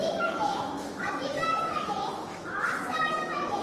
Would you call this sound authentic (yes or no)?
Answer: no